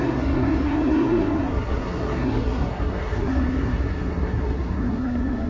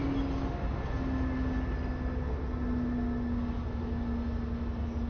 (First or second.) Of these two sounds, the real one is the second